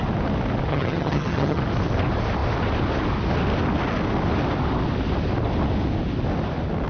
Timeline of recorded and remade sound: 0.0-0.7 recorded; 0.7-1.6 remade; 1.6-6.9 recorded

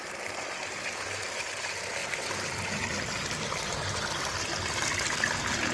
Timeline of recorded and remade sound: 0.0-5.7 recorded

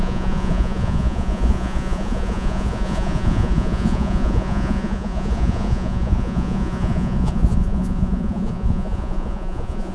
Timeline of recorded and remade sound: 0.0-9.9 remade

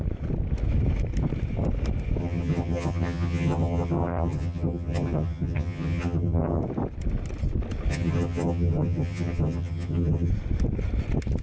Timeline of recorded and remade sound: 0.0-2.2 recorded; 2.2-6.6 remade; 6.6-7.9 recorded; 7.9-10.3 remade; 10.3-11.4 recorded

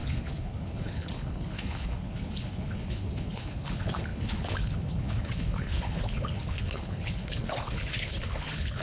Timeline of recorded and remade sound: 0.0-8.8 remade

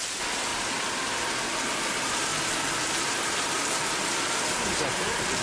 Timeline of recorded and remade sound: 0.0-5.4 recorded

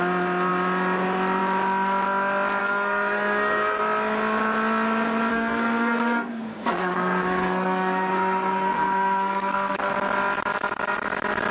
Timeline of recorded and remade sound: 0.0-2.6 recorded; 2.6-3.8 remade; 3.8-5.3 recorded; 5.3-9.9 remade; 9.9-11.5 recorded